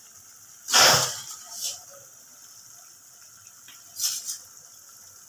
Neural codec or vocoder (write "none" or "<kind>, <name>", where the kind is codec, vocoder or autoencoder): none